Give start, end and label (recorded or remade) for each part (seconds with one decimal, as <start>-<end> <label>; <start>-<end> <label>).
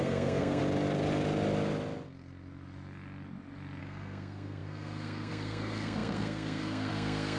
0.0-0.6 remade; 0.6-3.8 recorded; 3.8-7.4 remade